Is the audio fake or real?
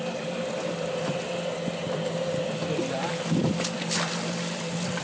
real